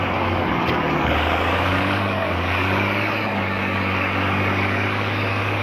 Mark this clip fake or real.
fake